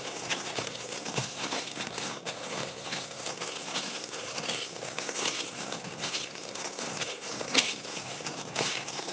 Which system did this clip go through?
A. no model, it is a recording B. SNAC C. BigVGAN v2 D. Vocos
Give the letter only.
B